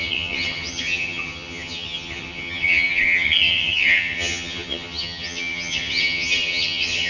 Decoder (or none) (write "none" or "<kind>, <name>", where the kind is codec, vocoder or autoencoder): vocoder, HiFi-GAN